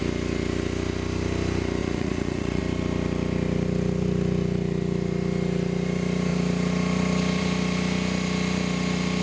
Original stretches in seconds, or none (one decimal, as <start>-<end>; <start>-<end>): 0.0-1.8; 2.6-9.2